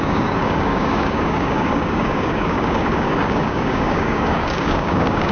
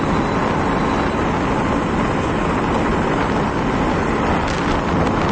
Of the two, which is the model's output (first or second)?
first